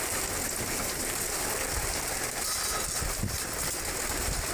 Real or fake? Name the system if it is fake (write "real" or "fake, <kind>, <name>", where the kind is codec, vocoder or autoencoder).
real